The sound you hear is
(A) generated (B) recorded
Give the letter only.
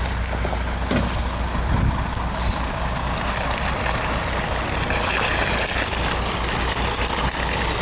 B